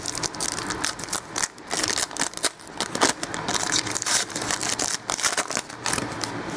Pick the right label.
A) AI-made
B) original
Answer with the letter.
B